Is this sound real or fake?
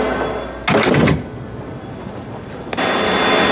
real